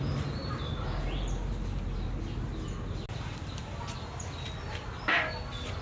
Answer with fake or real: real